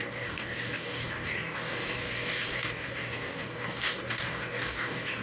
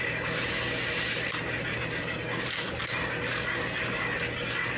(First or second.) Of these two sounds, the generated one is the first